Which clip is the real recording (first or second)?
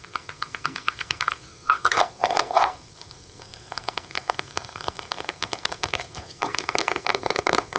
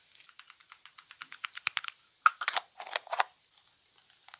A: second